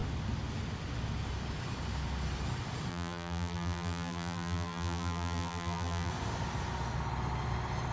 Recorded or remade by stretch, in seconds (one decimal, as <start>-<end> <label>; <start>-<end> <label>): 0.0-2.9 recorded; 2.9-6.1 remade; 6.1-7.9 recorded